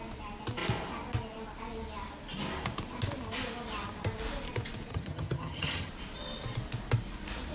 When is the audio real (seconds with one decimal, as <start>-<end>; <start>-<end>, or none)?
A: 0.0-4.9; 5.9-7.5